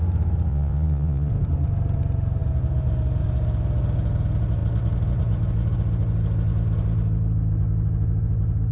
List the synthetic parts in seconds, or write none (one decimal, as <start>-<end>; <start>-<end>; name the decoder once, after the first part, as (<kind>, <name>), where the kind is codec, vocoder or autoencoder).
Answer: 0.5-1.3 (vocoder, Vocos)